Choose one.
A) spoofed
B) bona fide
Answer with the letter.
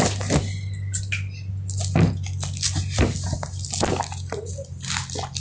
B